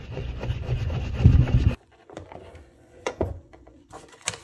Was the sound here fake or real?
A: fake